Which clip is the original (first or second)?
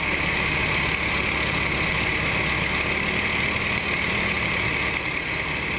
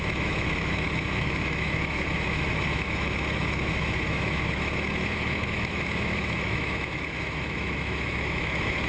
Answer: first